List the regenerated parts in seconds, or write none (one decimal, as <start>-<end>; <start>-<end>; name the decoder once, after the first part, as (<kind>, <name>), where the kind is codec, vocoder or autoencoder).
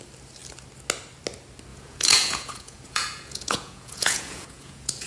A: 1.7-5.1 (vocoder, Vocos)